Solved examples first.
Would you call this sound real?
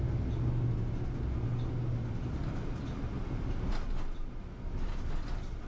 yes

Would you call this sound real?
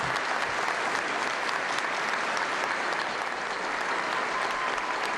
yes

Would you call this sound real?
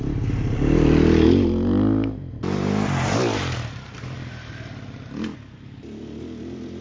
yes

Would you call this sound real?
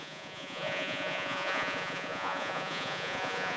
no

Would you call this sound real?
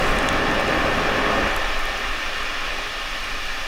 yes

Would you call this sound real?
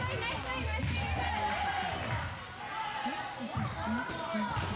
yes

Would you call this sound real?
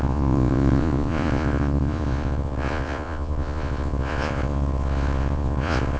no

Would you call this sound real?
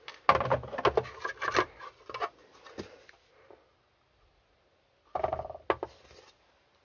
yes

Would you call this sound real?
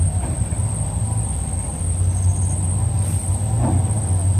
yes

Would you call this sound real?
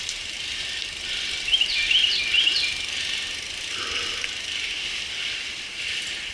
yes